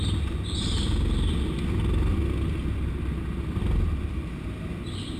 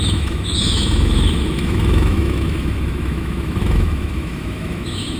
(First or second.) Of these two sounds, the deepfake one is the second